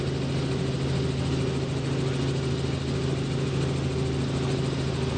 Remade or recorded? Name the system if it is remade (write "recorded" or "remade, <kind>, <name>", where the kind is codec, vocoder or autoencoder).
recorded